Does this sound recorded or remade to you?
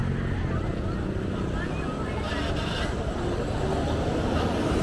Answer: recorded